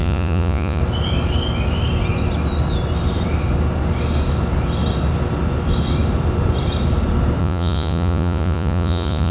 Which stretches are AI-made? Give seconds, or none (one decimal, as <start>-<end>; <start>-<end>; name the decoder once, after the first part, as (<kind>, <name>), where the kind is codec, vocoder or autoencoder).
0.0-0.8 (vocoder, Vocos); 7.4-9.3